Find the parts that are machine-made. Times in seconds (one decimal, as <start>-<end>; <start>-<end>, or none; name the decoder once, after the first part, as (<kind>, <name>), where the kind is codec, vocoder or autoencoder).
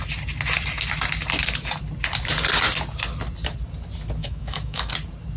4.2-4.9 (autoencoder, DAC-VAE)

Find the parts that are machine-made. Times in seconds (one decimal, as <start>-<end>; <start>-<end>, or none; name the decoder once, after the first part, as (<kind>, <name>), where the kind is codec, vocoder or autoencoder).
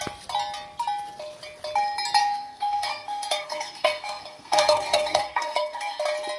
2.2-6.0 (codec, SNAC)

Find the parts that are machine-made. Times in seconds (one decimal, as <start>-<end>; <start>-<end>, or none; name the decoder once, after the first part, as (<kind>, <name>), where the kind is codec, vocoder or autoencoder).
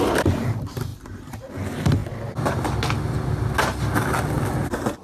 0.9-1.5 (vocoder, BigVGAN v2)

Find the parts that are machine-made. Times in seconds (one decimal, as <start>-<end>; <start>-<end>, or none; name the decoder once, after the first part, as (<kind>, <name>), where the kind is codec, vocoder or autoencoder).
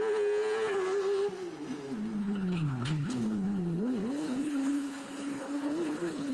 2.2-6.3 (codec, HILCodec)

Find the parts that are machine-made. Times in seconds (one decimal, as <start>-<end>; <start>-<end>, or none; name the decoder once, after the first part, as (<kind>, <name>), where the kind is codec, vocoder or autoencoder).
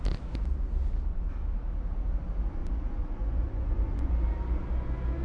2.6-4.1 (vocoder, Vocos)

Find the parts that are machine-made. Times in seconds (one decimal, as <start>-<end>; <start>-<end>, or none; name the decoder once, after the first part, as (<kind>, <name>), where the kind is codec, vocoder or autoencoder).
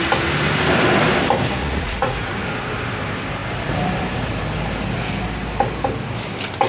1.6-2.3 (vocoder, Vocos)